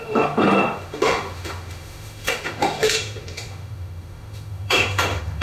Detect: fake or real fake